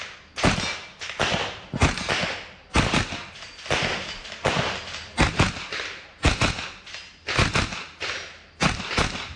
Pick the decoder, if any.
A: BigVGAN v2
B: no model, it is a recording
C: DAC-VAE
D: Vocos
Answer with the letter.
B